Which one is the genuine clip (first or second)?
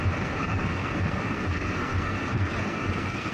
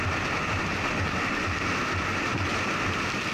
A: second